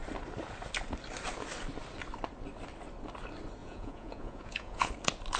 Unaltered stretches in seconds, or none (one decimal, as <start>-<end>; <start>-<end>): 0.0-3.6; 4.9-5.4